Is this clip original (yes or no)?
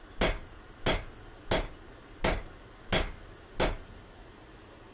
yes